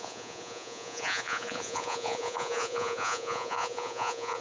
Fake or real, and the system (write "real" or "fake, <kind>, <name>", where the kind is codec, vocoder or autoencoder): fake, vocoder, Vocos